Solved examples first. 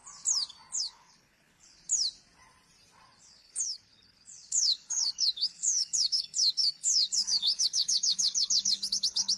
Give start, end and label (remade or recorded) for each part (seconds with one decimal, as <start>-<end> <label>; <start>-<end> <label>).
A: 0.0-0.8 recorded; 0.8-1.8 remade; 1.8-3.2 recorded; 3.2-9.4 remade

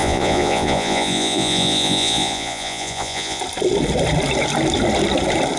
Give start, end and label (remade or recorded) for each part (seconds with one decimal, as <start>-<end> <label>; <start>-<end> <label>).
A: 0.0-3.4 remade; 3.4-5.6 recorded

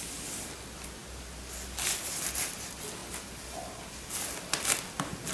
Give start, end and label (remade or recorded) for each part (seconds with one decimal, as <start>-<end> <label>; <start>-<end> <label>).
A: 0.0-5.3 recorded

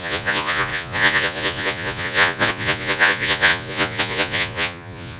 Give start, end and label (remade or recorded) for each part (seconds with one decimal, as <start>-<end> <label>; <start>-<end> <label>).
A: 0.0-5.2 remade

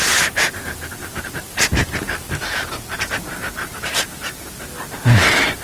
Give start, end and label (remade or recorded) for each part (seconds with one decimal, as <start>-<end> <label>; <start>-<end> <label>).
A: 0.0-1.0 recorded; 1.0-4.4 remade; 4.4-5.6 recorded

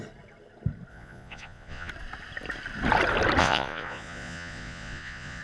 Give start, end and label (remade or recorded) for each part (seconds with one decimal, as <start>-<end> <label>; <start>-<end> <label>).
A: 0.0-0.9 recorded; 0.9-1.9 remade; 1.9-3.4 recorded; 3.4-5.4 remade